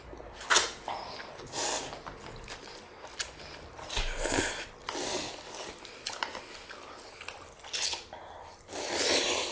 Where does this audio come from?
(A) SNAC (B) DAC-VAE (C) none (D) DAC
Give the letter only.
C